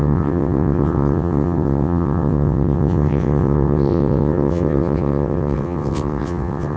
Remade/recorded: remade